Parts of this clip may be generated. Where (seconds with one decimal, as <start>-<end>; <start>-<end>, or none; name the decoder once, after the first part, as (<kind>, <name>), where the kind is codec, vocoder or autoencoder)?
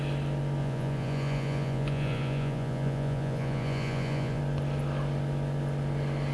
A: 0.6-4.4 (vocoder, Vocos)